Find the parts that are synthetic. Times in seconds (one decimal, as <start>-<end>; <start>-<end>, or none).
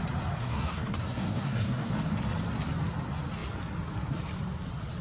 0.4-1.9